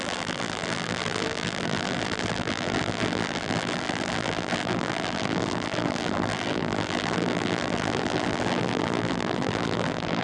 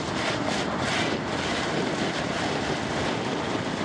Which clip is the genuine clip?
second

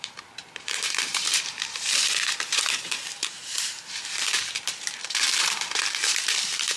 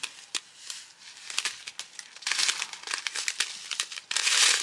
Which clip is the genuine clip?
second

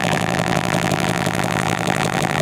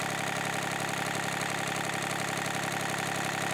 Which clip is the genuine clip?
second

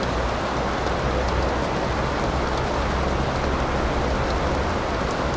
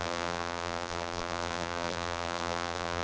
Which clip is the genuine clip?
first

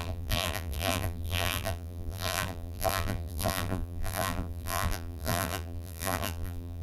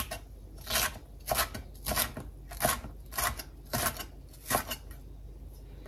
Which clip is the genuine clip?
second